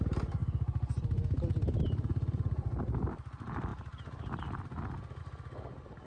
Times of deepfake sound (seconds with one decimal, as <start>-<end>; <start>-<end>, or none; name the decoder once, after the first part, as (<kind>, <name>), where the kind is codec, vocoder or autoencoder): none